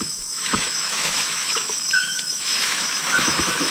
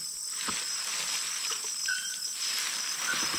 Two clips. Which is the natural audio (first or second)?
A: second